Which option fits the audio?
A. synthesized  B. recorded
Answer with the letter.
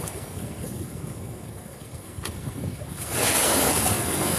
A